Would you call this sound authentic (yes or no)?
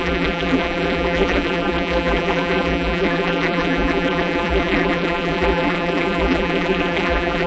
no